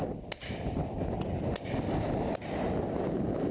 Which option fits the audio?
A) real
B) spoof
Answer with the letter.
A